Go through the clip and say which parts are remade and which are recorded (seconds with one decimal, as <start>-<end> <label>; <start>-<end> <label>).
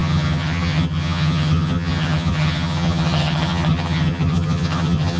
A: 0.0-5.2 remade